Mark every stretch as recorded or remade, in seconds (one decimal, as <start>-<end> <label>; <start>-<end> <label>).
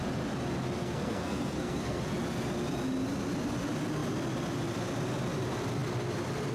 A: 0.0-0.8 recorded; 0.8-2.0 remade; 2.0-6.5 recorded